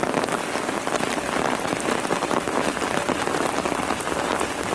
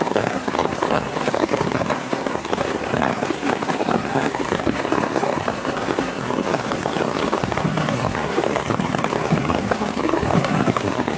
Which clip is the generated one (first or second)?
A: second